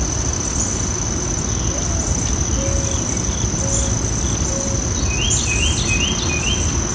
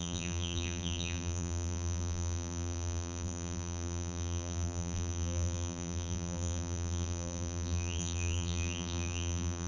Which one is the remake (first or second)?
second